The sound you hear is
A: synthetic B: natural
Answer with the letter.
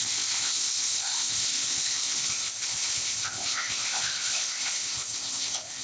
A